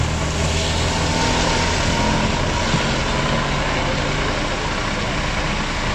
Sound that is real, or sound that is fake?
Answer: real